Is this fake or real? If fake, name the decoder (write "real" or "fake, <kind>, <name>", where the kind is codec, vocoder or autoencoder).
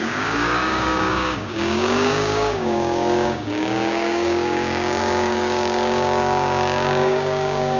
fake, codec, DAC